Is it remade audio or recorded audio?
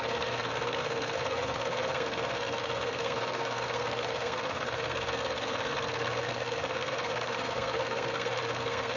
remade